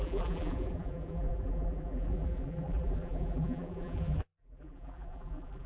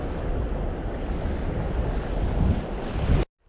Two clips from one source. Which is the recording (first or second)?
second